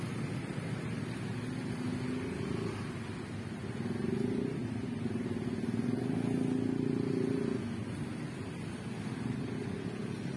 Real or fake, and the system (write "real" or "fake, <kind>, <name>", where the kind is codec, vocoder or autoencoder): real